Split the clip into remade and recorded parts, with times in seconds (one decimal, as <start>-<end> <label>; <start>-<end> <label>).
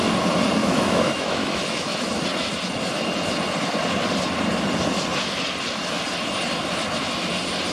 0.0-0.6 recorded; 0.6-2.1 remade; 2.1-7.7 recorded